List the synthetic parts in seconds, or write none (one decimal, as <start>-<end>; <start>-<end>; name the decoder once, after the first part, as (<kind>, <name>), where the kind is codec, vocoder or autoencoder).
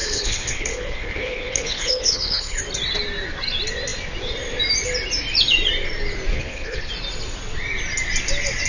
0.0-2.6 (codec, HILCodec); 6.3-6.9